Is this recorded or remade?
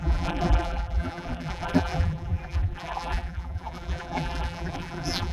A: remade